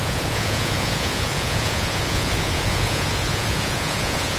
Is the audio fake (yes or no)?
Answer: yes